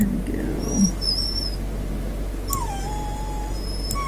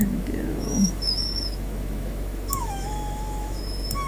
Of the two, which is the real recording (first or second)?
first